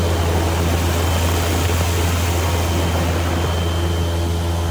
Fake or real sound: real